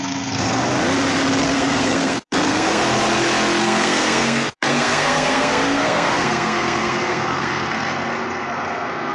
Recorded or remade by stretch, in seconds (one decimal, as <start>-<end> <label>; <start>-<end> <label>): 0.0-0.6 remade; 0.6-1.4 recorded; 1.4-2.8 remade; 2.8-3.6 recorded; 3.6-9.1 remade